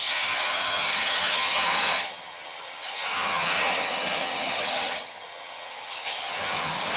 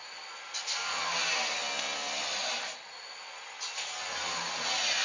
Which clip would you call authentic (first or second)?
second